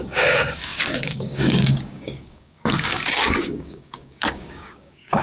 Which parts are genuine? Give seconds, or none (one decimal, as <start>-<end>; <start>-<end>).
none